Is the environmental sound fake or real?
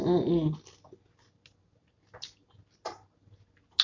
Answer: real